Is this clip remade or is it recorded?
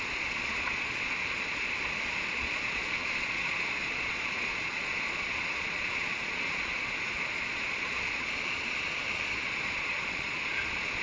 remade